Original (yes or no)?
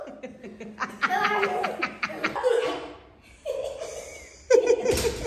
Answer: yes